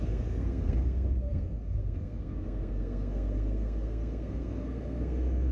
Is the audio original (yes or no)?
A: no